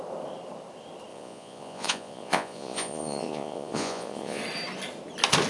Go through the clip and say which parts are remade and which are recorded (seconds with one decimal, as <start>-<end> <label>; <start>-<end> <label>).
0.0-1.1 recorded; 1.1-4.4 remade; 4.4-5.5 recorded